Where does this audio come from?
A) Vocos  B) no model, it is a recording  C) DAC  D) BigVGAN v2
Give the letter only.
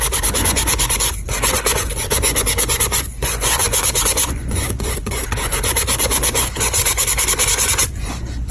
A